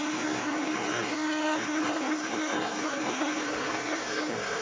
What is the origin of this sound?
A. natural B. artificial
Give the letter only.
B